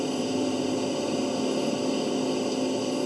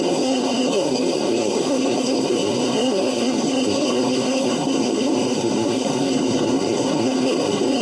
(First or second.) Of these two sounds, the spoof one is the second